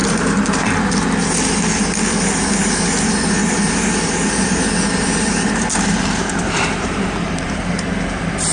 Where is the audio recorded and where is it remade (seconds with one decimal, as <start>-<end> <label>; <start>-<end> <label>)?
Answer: 0.0-3.4 recorded; 3.4-7.7 remade; 7.7-8.5 recorded